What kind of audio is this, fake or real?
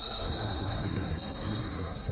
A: fake